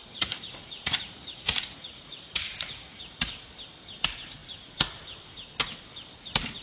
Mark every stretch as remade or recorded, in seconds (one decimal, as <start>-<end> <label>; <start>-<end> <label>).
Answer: 0.0-3.3 remade; 3.3-6.6 recorded